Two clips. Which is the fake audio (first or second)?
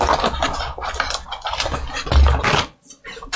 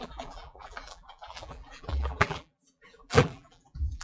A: second